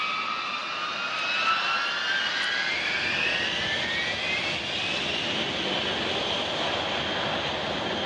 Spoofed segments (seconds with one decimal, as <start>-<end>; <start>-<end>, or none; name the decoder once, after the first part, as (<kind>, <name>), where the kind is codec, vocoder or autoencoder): none